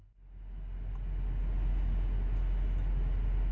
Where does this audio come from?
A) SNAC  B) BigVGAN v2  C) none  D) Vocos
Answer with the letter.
C